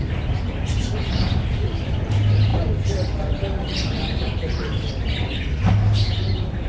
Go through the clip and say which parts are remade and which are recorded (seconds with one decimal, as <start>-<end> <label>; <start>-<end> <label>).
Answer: 0.0-6.7 recorded